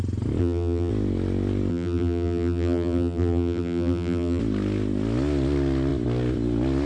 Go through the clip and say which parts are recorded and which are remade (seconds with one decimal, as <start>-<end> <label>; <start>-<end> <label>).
0.0-0.4 recorded; 0.4-0.9 remade; 0.9-1.7 recorded; 1.7-4.4 remade; 4.4-6.9 recorded